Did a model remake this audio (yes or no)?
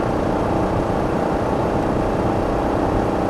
yes